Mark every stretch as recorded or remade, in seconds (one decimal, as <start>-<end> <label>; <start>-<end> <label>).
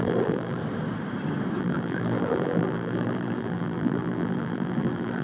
0.0-0.6 remade; 0.6-1.6 recorded; 1.6-5.2 remade